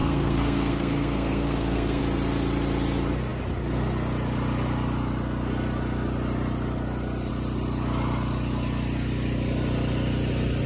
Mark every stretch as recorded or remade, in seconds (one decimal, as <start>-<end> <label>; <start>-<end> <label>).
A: 0.0-2.0 remade; 2.0-10.7 recorded